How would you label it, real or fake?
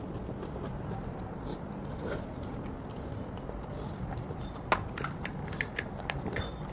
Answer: real